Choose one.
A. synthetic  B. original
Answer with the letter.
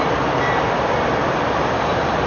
A